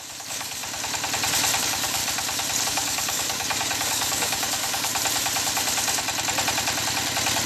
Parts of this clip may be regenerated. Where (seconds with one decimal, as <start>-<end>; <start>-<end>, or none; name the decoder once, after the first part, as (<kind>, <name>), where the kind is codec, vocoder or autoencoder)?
0.0-0.6 (codec, DAC); 1.6-2.0; 2.6-4.9